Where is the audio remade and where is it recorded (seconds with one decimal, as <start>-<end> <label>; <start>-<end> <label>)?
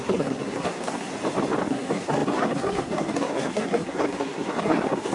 0.0-1.1 remade; 1.1-1.7 recorded; 1.7-5.1 remade